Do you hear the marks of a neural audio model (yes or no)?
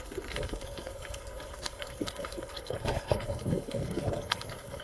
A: yes